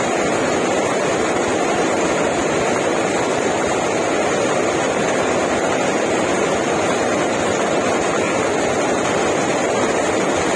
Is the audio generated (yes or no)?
no